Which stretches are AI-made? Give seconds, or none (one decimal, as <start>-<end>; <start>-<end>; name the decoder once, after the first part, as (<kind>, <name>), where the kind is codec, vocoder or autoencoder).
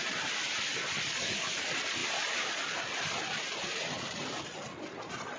none